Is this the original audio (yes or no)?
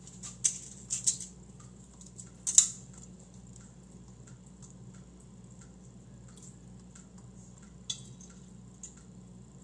yes